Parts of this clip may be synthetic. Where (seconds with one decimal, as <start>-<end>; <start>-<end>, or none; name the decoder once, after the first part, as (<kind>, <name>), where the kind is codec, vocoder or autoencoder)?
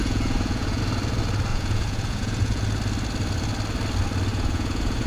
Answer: 0.0-0.8 (vocoder, Vocos); 1.5-2.6; 4.3-5.1